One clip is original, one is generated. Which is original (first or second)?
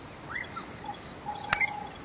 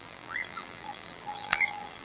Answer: first